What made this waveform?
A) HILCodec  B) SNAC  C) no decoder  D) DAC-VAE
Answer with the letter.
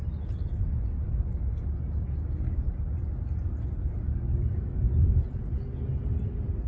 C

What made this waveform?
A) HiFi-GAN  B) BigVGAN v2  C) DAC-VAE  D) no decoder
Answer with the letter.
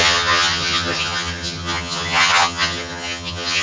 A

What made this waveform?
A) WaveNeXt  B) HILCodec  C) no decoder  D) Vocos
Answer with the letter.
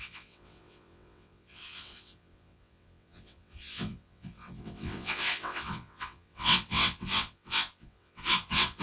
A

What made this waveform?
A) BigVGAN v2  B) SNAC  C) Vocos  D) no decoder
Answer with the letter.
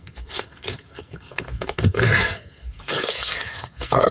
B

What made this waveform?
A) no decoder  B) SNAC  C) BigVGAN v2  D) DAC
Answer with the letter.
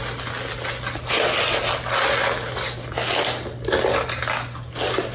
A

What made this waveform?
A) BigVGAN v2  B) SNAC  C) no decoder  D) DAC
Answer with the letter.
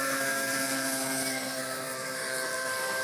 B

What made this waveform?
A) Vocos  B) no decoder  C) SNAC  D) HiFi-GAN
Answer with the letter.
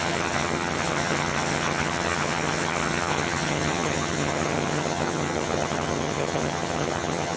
D